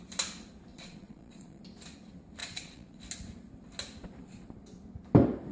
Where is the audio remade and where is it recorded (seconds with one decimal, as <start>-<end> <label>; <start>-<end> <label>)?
0.0-0.7 recorded; 0.7-1.6 remade; 1.6-2.4 recorded; 2.4-3.0 remade; 3.0-5.5 recorded